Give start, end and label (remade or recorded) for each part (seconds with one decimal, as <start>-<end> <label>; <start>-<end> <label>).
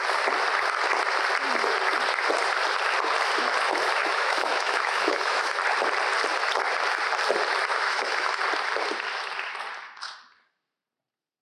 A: 0.0-4.0 recorded; 4.0-5.6 remade; 5.6-7.7 recorded; 7.7-8.4 remade; 8.4-11.4 recorded